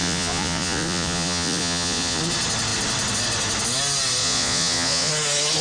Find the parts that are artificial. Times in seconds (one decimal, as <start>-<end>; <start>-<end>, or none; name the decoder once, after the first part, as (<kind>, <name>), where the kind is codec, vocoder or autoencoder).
0.0-2.2 (vocoder, Vocos); 4.2-5.1